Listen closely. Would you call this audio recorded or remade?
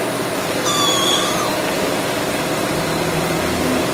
recorded